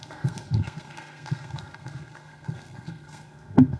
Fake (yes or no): yes